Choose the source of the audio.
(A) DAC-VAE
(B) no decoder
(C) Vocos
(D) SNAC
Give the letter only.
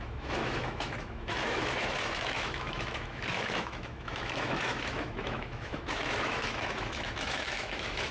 A